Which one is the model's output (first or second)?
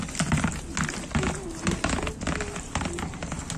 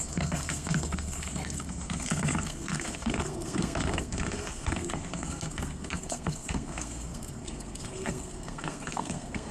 second